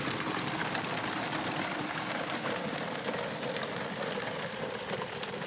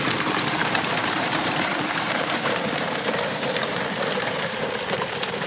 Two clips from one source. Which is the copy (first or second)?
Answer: second